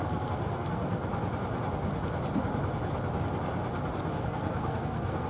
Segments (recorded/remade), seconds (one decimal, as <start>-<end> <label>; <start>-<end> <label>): 0.0-1.0 remade; 1.0-4.1 recorded; 4.1-5.3 remade